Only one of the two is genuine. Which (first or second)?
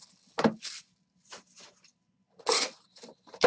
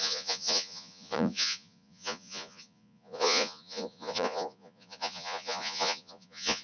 first